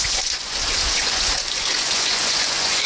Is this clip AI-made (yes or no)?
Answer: yes